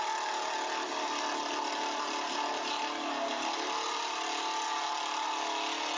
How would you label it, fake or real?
real